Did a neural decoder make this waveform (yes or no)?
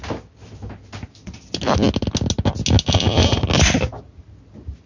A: no